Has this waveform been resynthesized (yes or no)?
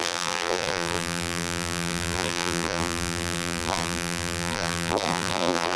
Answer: yes